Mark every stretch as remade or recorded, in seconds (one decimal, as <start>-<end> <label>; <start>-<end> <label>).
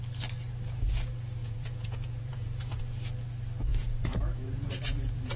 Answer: 0.0-1.4 recorded; 1.4-2.8 remade; 2.8-3.7 recorded; 3.7-5.4 remade